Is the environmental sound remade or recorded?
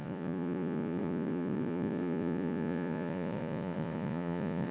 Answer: remade